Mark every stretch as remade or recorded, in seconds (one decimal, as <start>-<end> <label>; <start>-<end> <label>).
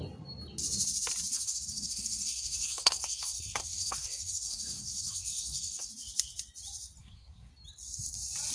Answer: 0.0-1.3 recorded; 1.3-5.9 remade; 5.9-7.0 recorded; 7.0-7.5 remade; 7.5-8.5 recorded